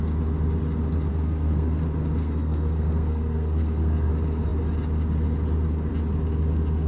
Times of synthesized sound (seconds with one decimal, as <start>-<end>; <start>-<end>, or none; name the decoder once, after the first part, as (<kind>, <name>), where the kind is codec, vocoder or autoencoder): 1.1-1.8 (codec, SNAC); 2.2-4.1